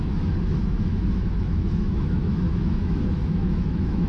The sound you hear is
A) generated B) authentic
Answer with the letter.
A